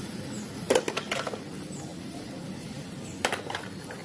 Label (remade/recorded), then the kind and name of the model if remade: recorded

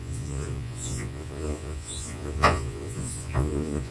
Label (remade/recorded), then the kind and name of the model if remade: remade, vocoder, Vocos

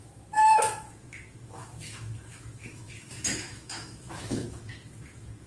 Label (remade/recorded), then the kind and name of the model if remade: remade, autoencoder, DAC-VAE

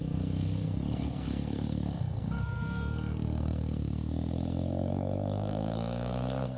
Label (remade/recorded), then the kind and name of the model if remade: remade, codec, SNAC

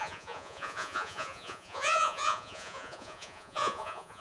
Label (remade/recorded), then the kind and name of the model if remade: remade, vocoder, Vocos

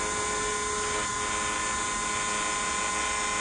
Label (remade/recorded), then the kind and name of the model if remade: recorded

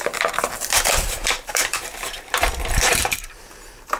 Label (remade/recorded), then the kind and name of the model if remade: remade, vocoder, BigVGAN v2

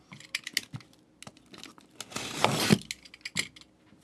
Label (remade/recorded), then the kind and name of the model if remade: recorded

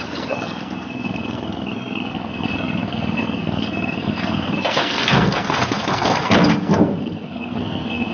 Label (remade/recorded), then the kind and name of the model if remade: remade, codec, SNAC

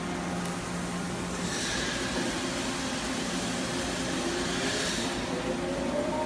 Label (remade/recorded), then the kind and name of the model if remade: recorded